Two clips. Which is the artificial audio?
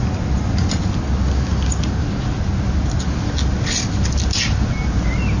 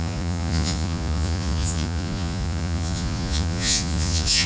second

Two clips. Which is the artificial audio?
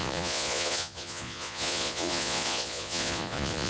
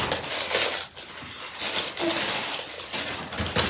first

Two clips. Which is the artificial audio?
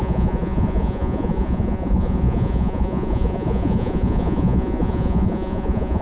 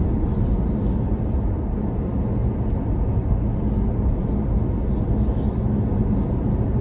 first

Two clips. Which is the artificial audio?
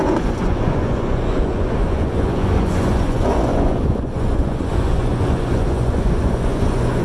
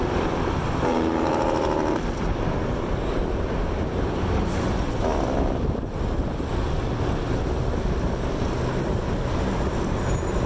first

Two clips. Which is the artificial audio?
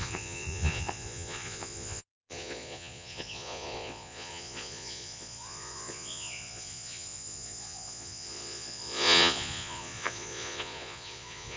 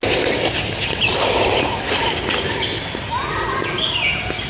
first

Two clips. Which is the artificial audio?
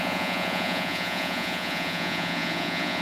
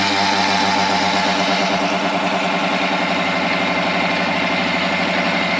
first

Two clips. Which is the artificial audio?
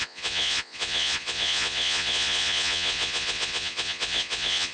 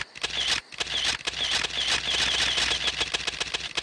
first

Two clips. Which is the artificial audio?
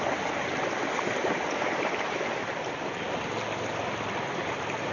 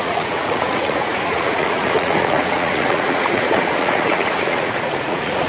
second